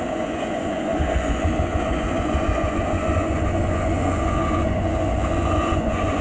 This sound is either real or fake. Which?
fake